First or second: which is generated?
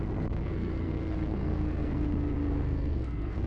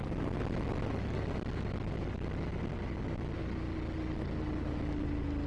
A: first